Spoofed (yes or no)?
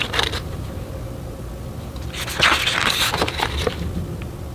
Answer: yes